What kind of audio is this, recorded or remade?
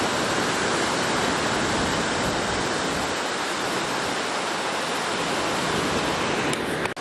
recorded